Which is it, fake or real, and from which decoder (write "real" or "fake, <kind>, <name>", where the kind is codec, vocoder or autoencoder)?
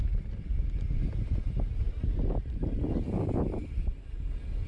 real